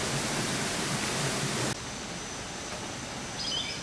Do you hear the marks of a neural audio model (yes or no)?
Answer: no